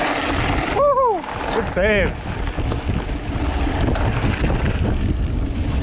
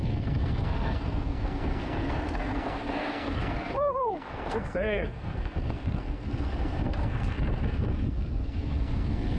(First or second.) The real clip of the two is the first